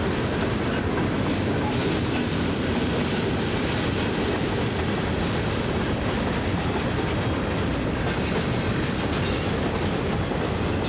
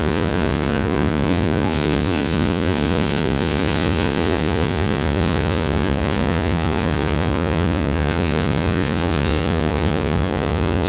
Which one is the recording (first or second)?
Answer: first